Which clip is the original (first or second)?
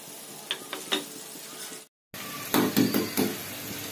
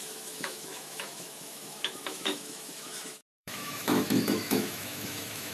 first